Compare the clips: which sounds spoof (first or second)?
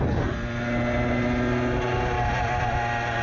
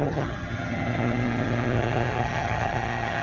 second